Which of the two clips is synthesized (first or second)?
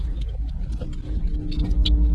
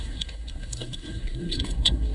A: second